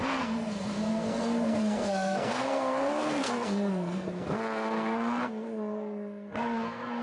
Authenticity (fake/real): fake